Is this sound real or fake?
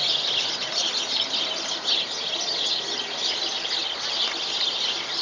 real